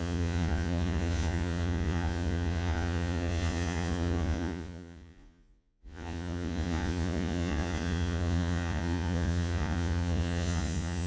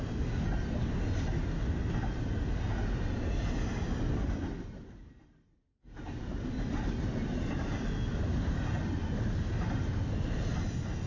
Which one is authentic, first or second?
second